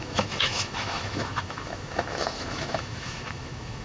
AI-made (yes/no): yes